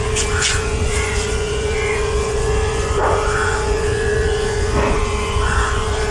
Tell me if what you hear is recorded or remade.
remade